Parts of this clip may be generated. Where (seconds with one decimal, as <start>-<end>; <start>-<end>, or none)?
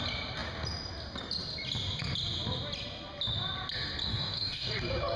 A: 4.1-4.7